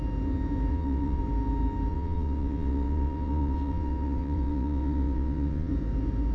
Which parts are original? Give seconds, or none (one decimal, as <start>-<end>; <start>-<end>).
0.0-0.7; 1.2-1.9; 5.7-6.3

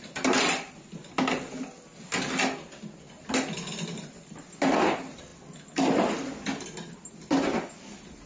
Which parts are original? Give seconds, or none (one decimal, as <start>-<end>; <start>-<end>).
0.0-8.3